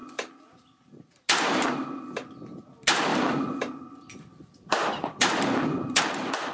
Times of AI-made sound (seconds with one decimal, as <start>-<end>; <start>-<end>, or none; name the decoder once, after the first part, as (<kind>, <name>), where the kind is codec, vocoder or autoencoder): 0.0-1.0 (vocoder, BigVGAN v2); 3.1-6.0